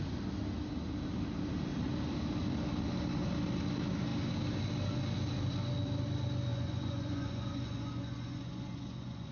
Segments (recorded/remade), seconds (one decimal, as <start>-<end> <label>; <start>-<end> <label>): 0.0-6.5 recorded; 6.5-9.3 remade